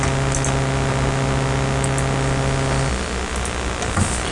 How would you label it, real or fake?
real